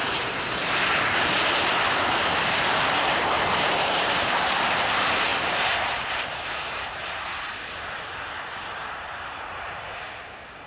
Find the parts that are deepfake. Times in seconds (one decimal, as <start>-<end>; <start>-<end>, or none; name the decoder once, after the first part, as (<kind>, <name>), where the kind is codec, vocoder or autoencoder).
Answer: 0.0-10.7 (vocoder, BigVGAN v2)